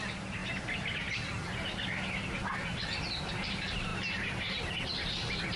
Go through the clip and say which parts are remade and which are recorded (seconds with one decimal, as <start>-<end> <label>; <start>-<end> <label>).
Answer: 0.0-5.6 recorded